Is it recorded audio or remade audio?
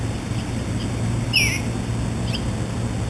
recorded